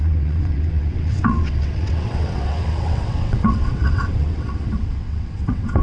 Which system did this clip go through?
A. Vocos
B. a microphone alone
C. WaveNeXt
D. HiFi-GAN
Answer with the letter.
C